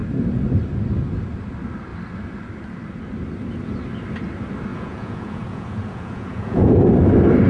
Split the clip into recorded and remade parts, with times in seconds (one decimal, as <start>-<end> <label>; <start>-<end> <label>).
0.0-4.7 recorded; 4.7-6.8 remade; 6.8-7.5 recorded